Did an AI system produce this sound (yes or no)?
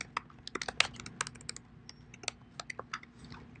no